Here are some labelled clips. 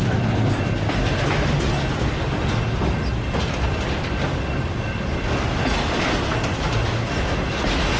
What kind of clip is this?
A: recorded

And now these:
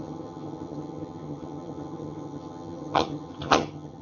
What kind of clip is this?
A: remade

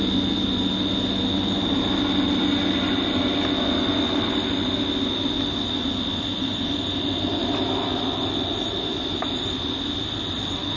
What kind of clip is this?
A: recorded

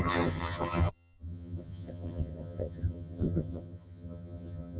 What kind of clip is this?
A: remade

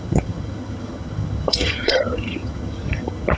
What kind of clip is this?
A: remade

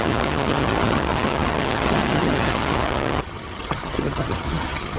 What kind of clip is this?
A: remade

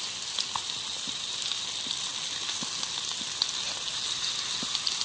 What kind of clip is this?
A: recorded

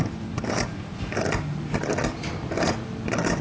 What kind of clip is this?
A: recorded